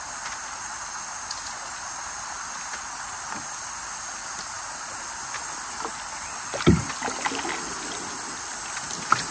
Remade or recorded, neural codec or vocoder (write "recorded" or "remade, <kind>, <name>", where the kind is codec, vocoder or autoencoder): recorded